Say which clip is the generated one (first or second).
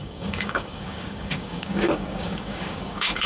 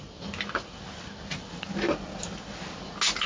first